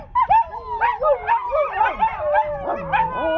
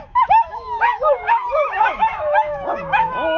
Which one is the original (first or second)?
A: first